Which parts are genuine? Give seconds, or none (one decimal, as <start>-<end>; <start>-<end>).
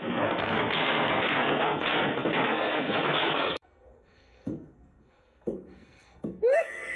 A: none